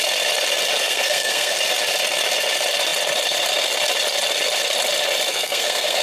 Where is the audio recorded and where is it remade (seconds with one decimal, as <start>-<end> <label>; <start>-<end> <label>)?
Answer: 0.0-0.8 recorded; 0.8-1.5 remade; 1.5-5.3 recorded; 5.3-6.0 remade